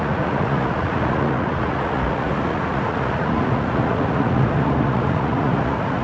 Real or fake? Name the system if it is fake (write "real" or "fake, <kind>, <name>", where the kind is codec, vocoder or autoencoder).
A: fake, vocoder, Vocos